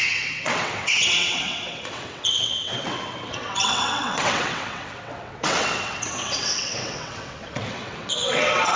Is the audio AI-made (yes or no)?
yes